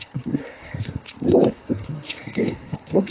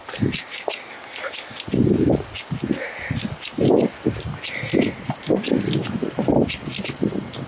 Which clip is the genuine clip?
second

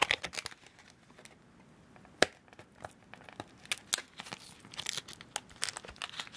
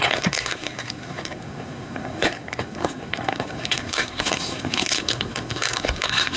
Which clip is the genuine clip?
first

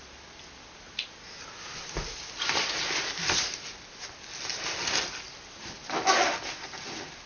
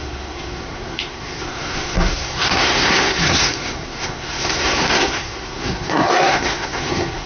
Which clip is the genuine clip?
first